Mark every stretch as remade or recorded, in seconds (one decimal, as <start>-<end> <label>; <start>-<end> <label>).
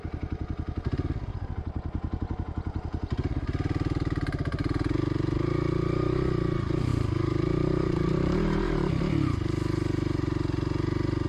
0.0-6.9 recorded; 6.9-8.9 remade; 8.9-11.3 recorded